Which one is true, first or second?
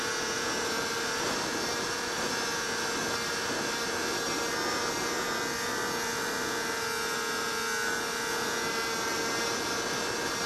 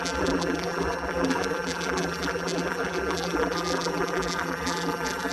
first